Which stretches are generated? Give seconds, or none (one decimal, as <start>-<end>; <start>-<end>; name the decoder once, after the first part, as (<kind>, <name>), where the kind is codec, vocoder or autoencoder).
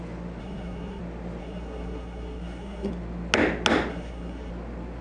0.4-1.0 (codec, SNAC); 1.4-2.9; 3.9-4.5